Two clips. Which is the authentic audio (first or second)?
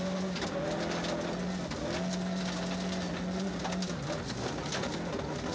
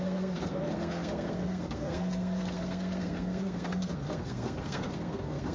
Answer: first